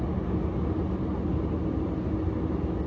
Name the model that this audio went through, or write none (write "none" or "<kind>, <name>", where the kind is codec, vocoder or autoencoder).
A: none